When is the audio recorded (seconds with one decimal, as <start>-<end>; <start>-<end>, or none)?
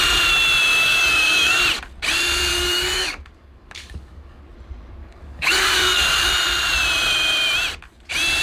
0.0-0.8; 1.6-2.5; 4.4-5.0; 6.3-8.4